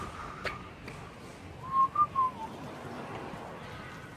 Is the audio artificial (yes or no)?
no